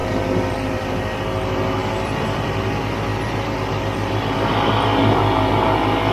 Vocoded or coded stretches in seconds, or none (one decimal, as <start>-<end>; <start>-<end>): 1.8-2.7

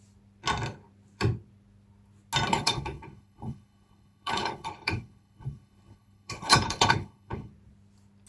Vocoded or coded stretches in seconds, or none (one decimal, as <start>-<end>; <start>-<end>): 2.5-7.5

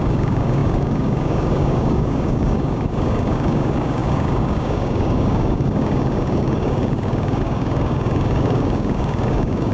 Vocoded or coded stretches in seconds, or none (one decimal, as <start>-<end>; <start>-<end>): 0.0-9.7

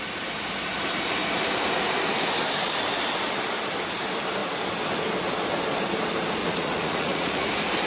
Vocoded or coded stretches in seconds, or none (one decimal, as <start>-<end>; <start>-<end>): 6.4-7.5